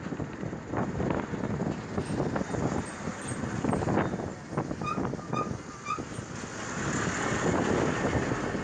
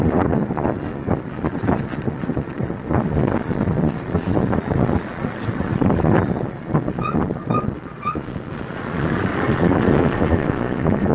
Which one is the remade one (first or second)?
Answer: second